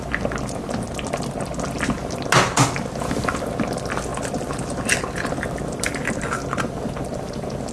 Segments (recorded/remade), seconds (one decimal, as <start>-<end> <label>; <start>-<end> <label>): 0.0-7.7 recorded